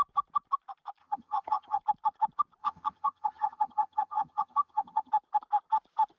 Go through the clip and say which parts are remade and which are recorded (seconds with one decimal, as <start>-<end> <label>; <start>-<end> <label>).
0.0-1.0 recorded; 1.0-1.8 remade; 1.8-2.6 recorded; 2.6-5.1 remade; 5.1-6.2 recorded